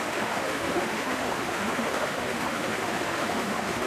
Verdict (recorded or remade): remade